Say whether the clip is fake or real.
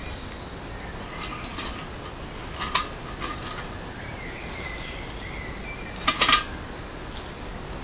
real